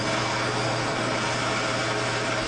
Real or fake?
real